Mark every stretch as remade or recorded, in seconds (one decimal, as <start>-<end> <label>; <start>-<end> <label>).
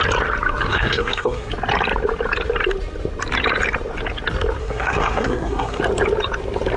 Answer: 0.0-0.7 recorded; 0.7-1.5 remade; 1.5-4.6 recorded; 4.6-5.8 remade; 5.8-6.8 recorded